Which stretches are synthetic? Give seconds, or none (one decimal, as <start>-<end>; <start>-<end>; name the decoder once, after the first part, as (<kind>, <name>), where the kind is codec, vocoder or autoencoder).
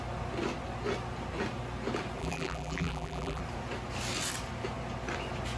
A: 2.2-3.4 (vocoder, BigVGAN v2)